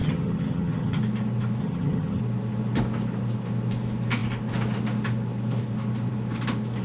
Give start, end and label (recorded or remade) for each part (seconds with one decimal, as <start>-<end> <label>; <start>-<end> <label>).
0.0-1.0 remade; 1.0-1.6 recorded; 1.6-2.2 remade; 2.2-6.8 recorded